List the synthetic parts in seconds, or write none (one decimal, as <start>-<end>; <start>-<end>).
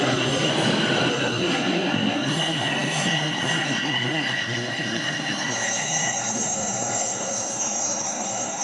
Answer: 0.0-0.5; 1.1-8.6